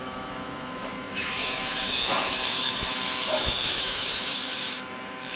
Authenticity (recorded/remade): remade